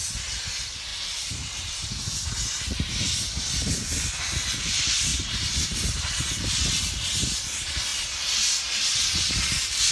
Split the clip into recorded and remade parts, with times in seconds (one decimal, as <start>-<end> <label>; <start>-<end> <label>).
0.0-0.9 recorded; 0.9-2.6 remade; 2.6-5.1 recorded; 5.1-6.4 remade; 6.4-9.9 recorded